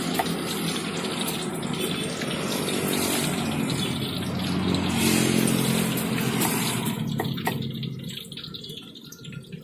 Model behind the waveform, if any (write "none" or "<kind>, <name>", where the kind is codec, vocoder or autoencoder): none